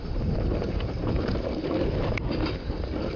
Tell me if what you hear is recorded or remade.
recorded